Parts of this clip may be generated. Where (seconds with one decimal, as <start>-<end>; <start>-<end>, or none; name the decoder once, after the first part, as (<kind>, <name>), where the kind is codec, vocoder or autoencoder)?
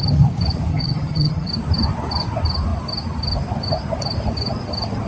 0.7-1.5 (vocoder, HiFi-GAN)